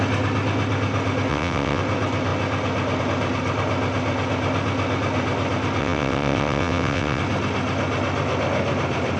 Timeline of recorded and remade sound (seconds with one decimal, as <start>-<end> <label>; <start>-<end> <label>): 0.0-1.3 recorded; 1.3-1.8 remade; 1.8-5.8 recorded; 5.8-7.2 remade; 7.2-9.2 recorded